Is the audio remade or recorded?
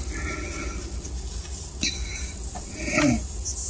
recorded